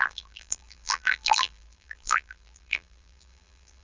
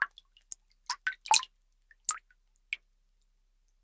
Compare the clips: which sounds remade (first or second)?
first